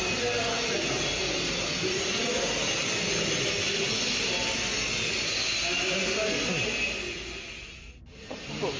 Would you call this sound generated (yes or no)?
no